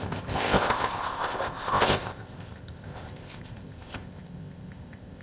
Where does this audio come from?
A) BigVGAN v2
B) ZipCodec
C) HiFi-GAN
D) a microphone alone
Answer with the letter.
B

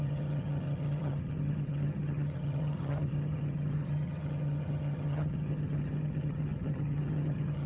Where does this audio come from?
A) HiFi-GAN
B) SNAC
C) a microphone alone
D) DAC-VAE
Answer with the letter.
A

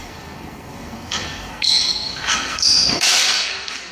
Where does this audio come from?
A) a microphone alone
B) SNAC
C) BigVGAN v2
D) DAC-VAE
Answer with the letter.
B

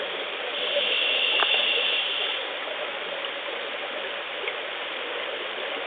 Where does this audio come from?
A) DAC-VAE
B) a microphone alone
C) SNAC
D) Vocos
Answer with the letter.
B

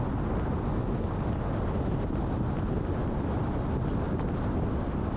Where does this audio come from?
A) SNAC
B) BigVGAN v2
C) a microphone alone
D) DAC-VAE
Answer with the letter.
C